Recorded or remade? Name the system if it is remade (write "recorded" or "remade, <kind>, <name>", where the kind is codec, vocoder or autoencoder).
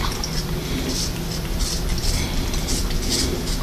recorded